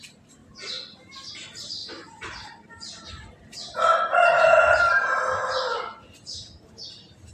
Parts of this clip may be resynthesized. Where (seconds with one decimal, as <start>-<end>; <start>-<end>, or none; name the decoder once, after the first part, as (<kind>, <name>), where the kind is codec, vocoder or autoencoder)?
0.0-0.4 (vocoder, BigVGAN v2); 1.3-3.9; 6.7-7.3

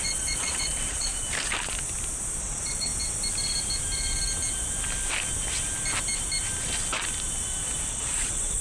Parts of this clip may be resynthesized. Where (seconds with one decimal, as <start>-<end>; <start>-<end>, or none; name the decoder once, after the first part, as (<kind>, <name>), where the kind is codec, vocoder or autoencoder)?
0.0-1.1 (vocoder, Vocos); 2.4-2.9; 7.9-8.6

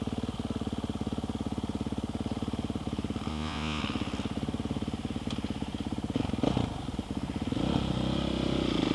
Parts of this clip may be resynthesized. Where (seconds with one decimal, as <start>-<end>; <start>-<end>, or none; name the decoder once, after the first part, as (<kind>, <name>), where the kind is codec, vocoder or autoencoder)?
3.3-3.8 (vocoder, Vocos)

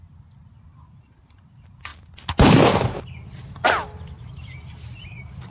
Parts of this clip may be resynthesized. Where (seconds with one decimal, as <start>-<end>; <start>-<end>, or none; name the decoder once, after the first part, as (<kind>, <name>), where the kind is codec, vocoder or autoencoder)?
none

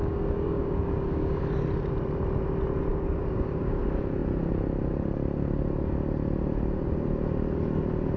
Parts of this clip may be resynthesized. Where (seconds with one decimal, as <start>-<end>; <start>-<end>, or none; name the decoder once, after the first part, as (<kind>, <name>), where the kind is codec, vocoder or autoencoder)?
0.0-1.4 (codec, DAC); 2.9-3.8

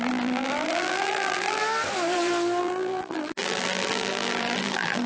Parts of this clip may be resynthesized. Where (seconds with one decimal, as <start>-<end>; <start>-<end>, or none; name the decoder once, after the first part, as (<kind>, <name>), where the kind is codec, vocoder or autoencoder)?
0.0-1.6 (vocoder, BigVGAN v2); 2.6-5.1